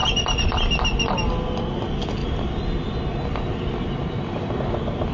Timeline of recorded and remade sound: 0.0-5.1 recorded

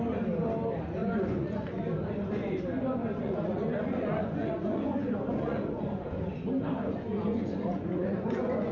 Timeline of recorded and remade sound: 0.0-1.0 recorded; 1.0-1.7 remade; 1.7-3.0 recorded; 3.0-6.0 remade; 6.0-7.1 recorded; 7.1-8.7 remade

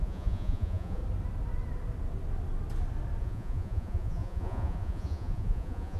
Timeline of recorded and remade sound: 0.0-1.0 remade; 1.0-3.2 recorded; 3.2-6.0 remade

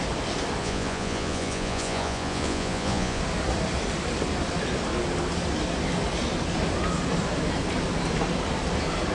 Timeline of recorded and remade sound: 0.0-0.6 recorded; 0.6-3.2 remade; 3.2-9.1 recorded

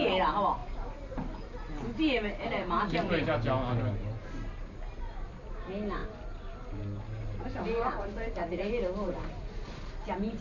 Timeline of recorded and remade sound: 0.0-10.4 recorded

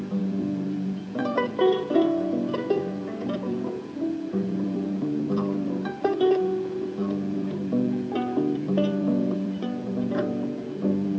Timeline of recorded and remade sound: 0.0-11.2 remade

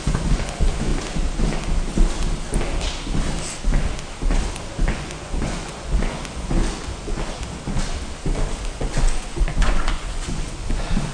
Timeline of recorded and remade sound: 0.0-0.9 remade; 0.9-4.9 recorded; 4.9-7.1 remade; 7.1-8.6 recorded; 8.6-11.1 remade